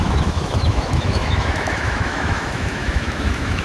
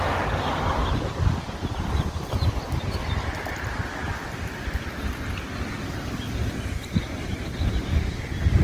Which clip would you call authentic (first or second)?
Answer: second